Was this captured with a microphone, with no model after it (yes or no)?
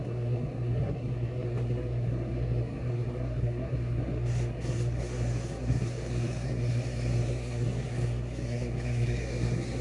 no